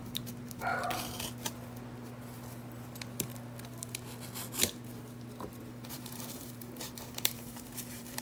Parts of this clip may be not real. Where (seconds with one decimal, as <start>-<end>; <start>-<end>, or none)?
0.0-0.7; 5.6-8.2